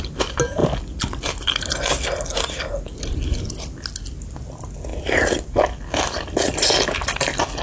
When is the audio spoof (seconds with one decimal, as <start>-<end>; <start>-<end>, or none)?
none